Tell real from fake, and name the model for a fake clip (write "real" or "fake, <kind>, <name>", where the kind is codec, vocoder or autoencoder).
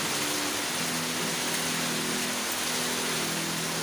real